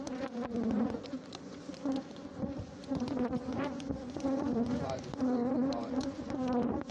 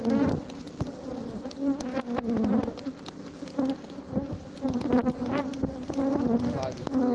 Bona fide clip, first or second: second